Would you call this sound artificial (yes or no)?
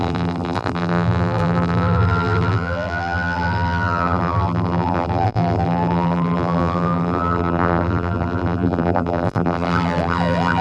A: yes